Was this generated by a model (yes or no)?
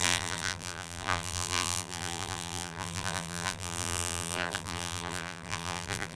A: yes